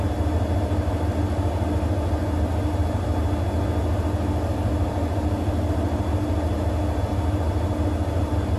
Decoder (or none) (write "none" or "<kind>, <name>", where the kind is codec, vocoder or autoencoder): none